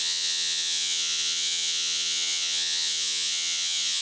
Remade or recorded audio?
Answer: remade